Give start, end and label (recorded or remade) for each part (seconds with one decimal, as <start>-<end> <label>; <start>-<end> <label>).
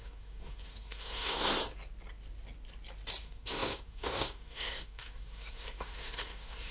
0.0-1.6 remade; 1.6-3.2 recorded; 3.2-6.7 remade